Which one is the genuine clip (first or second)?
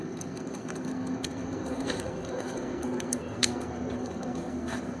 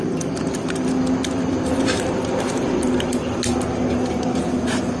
second